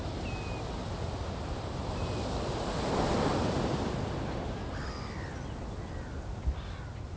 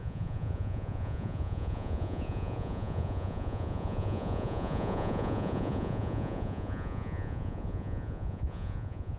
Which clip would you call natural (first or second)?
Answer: first